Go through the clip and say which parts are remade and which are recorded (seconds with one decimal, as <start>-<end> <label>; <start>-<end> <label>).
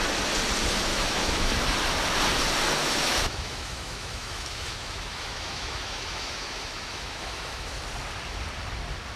0.0-0.9 recorded; 0.9-1.5 remade; 1.5-2.8 recorded; 2.8-7.8 remade; 7.8-9.2 recorded